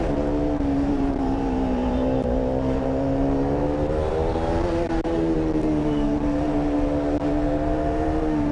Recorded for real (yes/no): no